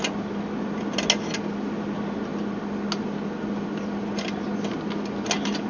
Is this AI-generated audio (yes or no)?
no